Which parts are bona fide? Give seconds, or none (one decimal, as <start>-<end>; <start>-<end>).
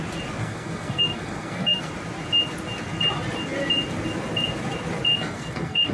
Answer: 0.0-0.4; 1.9-5.1